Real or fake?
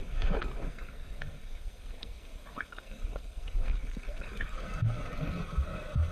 fake